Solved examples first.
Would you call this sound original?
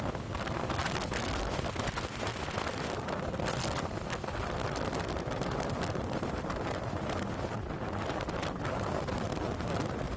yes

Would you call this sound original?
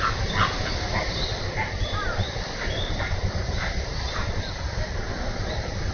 yes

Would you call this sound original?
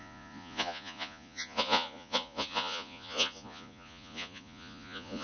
no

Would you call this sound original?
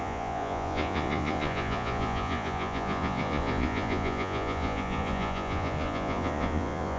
no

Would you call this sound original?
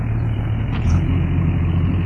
no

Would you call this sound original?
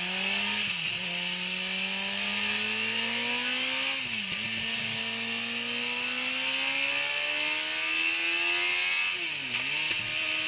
yes